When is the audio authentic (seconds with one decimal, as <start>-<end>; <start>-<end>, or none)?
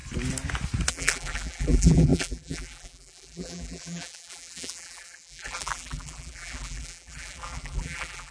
0.0-0.9